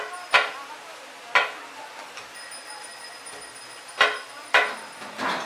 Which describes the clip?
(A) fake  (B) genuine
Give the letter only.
B